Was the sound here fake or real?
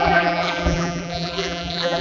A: fake